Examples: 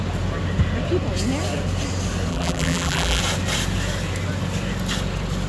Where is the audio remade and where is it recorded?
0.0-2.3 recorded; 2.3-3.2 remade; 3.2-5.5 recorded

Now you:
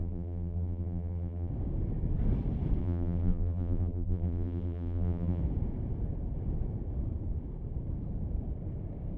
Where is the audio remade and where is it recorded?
0.0-1.5 remade; 1.5-2.8 recorded; 2.8-5.4 remade; 5.4-9.2 recorded